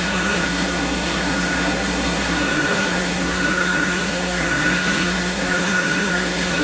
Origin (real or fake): fake